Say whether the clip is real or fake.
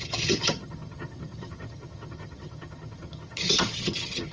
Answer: fake